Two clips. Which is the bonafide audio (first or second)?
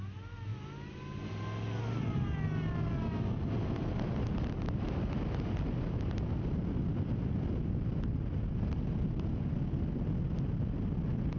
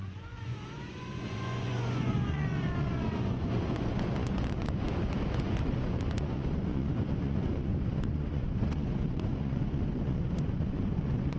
first